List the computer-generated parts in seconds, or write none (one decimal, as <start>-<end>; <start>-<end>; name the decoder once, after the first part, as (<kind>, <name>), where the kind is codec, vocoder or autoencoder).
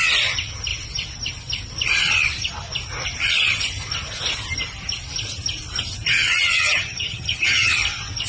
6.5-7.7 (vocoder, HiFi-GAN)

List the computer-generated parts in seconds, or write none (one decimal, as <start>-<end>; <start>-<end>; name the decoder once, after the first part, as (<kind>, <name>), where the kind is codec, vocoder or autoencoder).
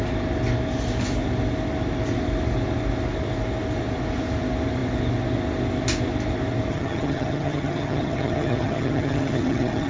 6.7-9.9 (vocoder, HiFi-GAN)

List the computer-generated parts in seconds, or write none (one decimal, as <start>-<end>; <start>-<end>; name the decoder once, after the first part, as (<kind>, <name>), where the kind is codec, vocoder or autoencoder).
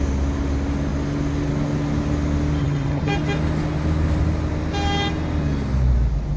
2.6-3.1 (vocoder, HiFi-GAN)